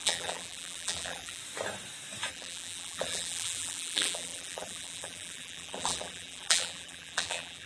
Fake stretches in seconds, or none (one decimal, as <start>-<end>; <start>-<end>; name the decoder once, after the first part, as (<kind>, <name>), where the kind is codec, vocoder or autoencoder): 0.0-1.4 (vocoder, BigVGAN v2); 2.3-7.7